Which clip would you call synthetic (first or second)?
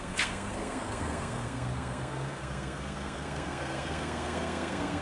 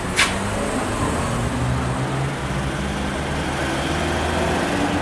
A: first